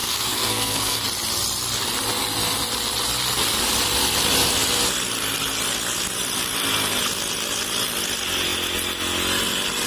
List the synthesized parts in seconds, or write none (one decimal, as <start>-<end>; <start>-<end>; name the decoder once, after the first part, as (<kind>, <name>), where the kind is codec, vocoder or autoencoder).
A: 0.0-1.0 (codec, SNAC)